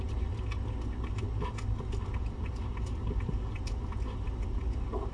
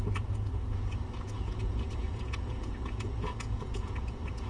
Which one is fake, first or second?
second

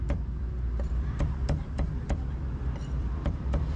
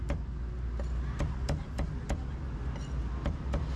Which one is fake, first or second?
first